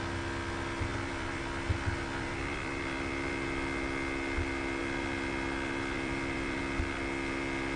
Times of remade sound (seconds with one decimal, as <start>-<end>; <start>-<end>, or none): 0.9-3.3; 4.8-6.6